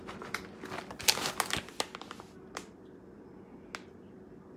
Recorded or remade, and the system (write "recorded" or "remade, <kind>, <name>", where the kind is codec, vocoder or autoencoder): recorded